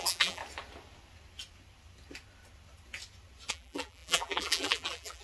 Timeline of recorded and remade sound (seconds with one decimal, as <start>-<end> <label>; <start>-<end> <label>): 0.0-0.4 remade; 0.4-3.5 recorded; 3.5-5.2 remade